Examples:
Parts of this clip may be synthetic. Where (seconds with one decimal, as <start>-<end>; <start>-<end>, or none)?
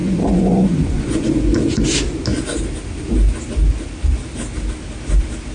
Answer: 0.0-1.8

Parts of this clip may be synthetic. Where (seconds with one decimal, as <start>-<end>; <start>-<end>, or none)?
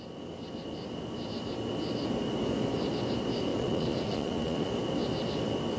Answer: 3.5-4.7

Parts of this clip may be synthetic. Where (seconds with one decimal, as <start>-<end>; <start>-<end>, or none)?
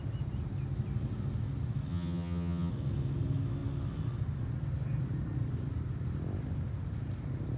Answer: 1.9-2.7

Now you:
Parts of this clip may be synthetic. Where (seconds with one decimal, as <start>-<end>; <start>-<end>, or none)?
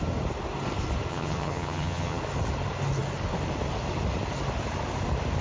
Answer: 1.1-2.2